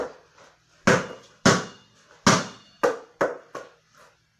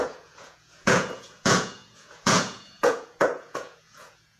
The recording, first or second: first